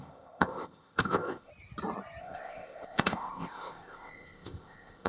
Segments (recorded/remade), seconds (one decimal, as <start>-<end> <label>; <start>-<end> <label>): 0.0-1.5 remade; 1.5-2.2 recorded; 2.2-5.1 remade